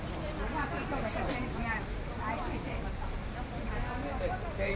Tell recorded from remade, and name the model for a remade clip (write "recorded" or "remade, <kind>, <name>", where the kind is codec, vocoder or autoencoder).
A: recorded